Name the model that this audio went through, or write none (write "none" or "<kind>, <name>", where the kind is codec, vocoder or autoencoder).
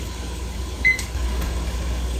codec, DAC